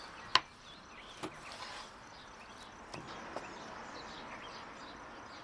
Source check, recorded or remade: recorded